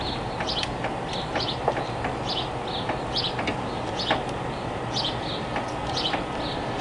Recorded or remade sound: recorded